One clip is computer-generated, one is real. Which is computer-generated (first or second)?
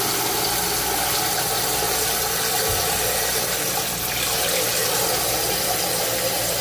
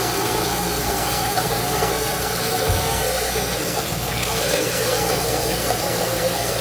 second